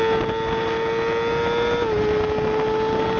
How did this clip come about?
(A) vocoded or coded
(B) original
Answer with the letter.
B